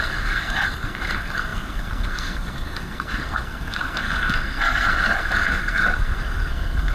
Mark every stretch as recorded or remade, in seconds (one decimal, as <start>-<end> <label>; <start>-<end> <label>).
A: 0.0-6.9 remade